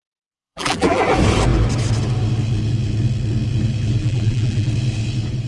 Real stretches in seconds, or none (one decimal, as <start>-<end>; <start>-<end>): 1.0-4.0; 4.7-5.5